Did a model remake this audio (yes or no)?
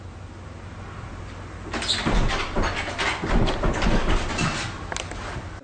no